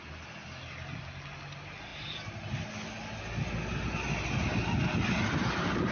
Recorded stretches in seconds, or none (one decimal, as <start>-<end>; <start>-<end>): 0.0-5.9